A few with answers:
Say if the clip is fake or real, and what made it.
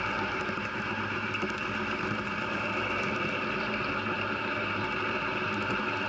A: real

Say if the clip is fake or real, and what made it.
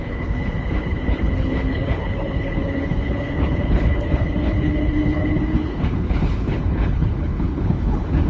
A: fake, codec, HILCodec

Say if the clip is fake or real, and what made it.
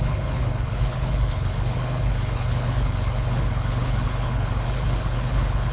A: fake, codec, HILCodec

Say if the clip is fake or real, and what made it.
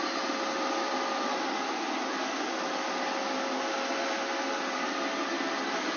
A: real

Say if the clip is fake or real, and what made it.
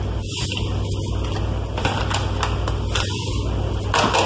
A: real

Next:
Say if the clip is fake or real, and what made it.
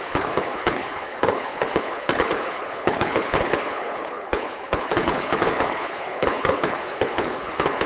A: fake, codec, HILCodec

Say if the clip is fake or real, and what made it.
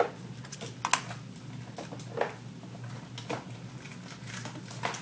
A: real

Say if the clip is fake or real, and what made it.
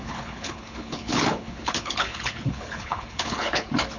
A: fake, codec, HILCodec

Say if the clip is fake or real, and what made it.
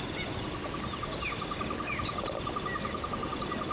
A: real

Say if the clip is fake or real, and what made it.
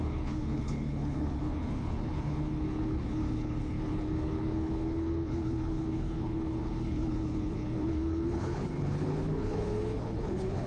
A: fake, codec, HILCodec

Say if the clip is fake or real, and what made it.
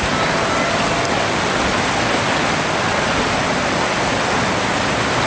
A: real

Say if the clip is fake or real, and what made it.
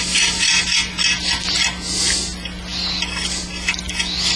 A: real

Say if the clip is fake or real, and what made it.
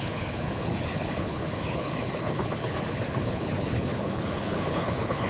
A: fake, codec, HILCodec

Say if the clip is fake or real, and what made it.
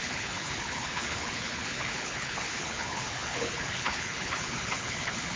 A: fake, codec, HILCodec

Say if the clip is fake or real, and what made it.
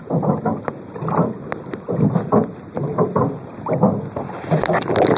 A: real